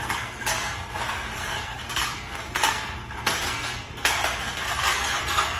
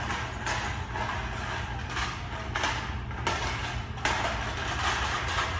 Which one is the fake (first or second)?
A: first